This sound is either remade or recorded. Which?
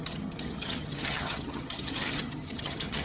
remade